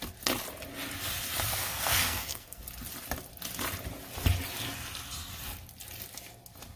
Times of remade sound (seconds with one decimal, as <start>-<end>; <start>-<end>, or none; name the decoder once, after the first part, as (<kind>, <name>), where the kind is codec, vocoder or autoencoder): 1.5-2.6 (codec, SNAC)